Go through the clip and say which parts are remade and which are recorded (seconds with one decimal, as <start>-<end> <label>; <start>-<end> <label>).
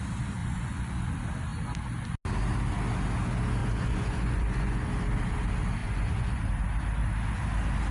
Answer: 0.0-0.4 recorded; 0.4-1.1 remade; 1.1-3.6 recorded; 3.6-4.9 remade; 4.9-5.8 recorded; 5.8-6.4 remade; 6.4-7.9 recorded